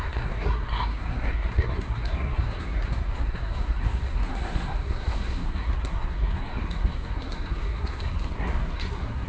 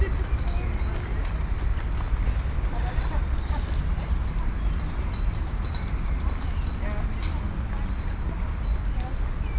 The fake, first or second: first